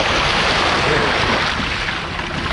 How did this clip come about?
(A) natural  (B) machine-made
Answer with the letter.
A